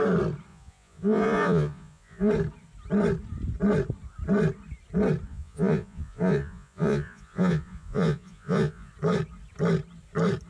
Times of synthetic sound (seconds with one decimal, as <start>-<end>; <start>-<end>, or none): 0.5-2.3; 5.3-8.9